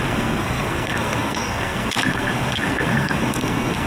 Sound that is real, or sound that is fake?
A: fake